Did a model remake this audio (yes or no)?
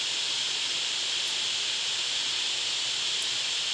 no